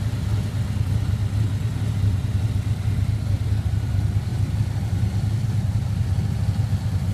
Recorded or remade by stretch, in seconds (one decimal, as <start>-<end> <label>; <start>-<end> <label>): 0.0-4.3 recorded; 4.3-6.4 remade; 6.4-7.1 recorded